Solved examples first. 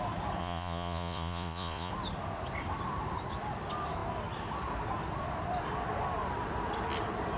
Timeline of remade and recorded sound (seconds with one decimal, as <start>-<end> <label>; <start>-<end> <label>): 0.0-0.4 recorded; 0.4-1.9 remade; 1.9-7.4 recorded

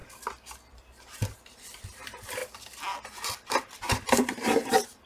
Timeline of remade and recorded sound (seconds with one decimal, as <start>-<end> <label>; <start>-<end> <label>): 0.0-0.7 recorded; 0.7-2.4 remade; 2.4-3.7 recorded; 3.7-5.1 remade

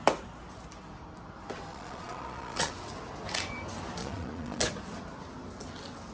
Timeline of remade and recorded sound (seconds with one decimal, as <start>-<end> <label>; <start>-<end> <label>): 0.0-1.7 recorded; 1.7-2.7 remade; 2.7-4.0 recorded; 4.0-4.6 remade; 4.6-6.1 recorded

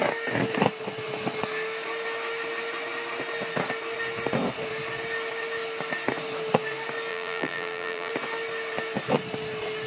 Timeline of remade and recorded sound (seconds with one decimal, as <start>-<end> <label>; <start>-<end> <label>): 0.0-7.1 recorded; 7.1-8.1 remade; 8.1-9.9 recorded